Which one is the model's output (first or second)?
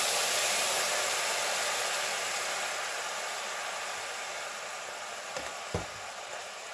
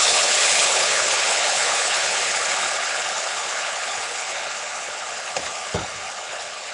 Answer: second